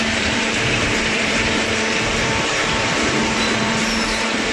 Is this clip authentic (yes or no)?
no